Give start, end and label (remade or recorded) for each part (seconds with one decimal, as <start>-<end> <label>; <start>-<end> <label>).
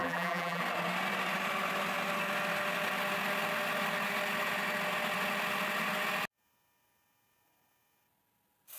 0.0-0.6 remade; 0.6-8.8 recorded